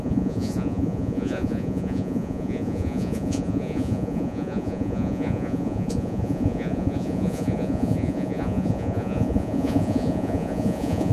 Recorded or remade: remade